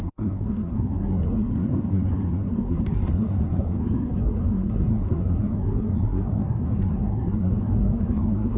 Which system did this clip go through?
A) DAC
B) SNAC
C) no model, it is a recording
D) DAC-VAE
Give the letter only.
B